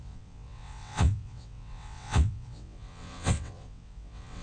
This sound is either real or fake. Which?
fake